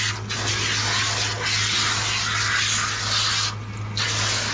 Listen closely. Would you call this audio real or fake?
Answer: real